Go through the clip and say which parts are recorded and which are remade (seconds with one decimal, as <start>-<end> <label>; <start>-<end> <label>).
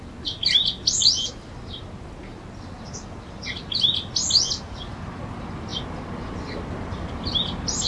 0.0-7.9 recorded